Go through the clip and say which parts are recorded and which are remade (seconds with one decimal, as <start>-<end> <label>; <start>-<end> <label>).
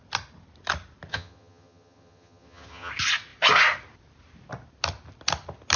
0.0-1.1 recorded; 1.1-2.9 remade; 2.9-5.8 recorded